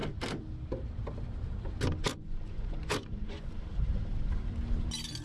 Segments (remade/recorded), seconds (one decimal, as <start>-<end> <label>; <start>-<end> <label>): 0.0-2.1 recorded; 2.1-3.5 remade; 3.5-5.2 recorded